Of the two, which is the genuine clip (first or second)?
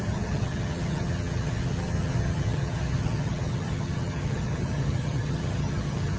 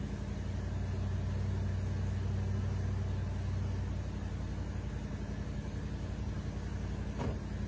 second